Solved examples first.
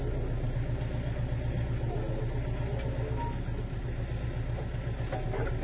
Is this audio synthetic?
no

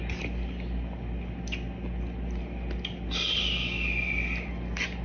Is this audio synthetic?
no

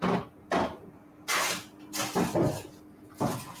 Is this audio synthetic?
no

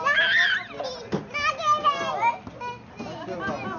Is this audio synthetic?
no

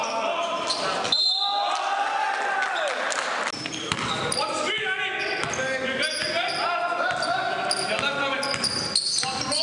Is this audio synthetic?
no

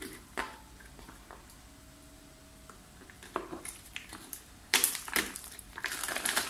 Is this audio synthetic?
yes